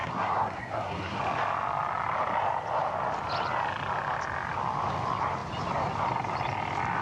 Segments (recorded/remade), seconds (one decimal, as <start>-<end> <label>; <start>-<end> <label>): 0.0-1.2 remade; 1.2-7.0 recorded